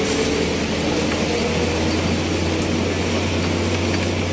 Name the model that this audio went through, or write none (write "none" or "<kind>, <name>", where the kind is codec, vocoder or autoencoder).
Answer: none